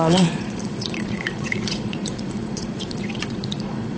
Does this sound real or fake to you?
fake